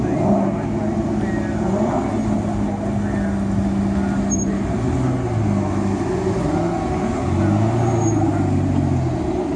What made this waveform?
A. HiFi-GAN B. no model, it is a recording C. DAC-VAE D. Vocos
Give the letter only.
B